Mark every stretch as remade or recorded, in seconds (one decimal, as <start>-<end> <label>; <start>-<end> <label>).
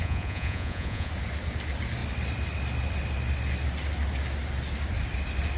0.0-1.1 remade; 1.1-5.6 recorded